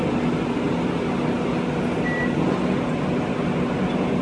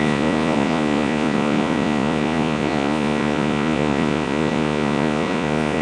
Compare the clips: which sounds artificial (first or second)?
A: second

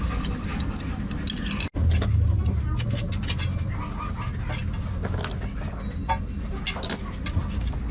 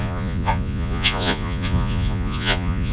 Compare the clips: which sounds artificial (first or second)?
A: second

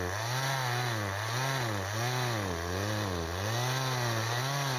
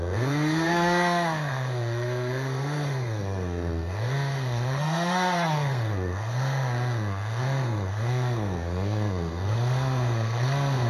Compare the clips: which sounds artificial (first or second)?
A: second